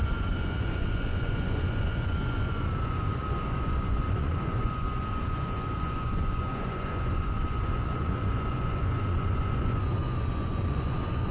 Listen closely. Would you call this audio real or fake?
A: fake